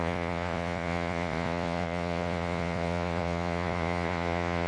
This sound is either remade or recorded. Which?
remade